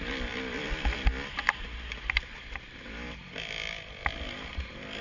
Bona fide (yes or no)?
yes